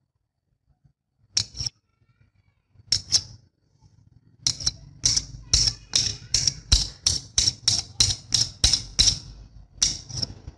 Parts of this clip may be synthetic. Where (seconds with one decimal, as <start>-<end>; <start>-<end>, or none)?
6.1-7.5